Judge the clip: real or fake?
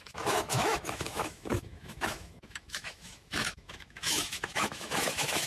fake